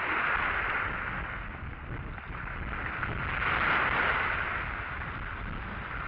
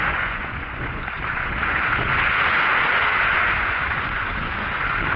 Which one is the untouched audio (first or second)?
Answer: first